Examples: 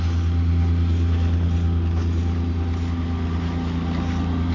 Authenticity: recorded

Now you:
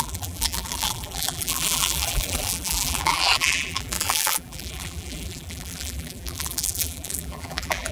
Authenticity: remade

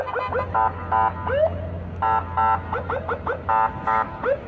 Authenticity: recorded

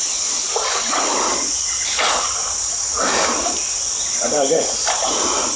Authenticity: recorded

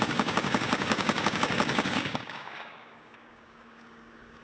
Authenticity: remade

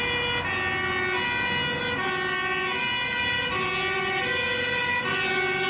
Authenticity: recorded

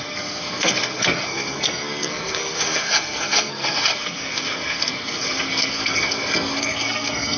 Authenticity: remade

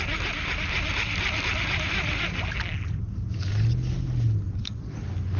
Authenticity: recorded